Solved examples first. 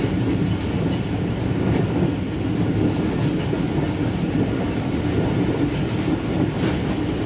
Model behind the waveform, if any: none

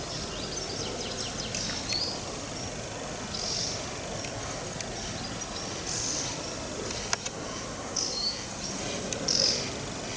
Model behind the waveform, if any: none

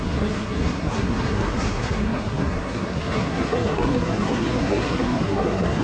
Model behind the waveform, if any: codec, SNAC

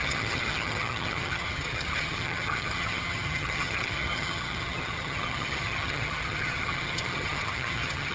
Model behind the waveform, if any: vocoder, HiFi-GAN